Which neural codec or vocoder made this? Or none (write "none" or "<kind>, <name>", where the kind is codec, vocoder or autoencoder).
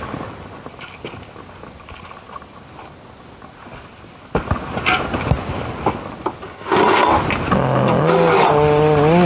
none